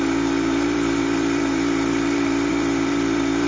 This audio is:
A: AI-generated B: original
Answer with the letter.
A